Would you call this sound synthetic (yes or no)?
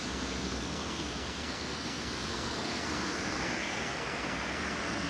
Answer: yes